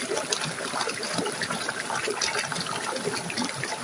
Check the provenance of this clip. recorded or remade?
recorded